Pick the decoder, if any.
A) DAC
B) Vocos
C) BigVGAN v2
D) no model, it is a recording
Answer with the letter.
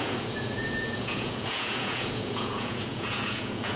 B